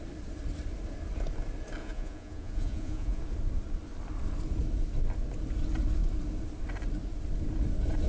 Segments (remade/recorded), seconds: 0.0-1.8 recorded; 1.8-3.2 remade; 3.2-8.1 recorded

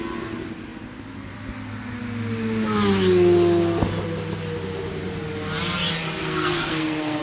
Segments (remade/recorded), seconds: 0.0-6.2 recorded; 6.2-7.2 remade

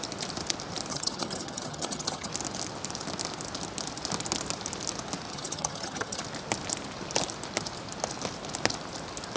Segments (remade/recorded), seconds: 0.0-0.9 recorded; 0.9-2.3 remade; 2.3-5.3 recorded; 5.3-6.2 remade; 6.2-9.4 recorded